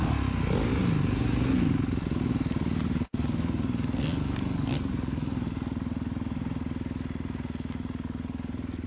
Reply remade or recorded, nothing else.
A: recorded